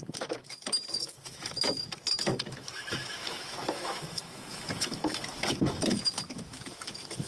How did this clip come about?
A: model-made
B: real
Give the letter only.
A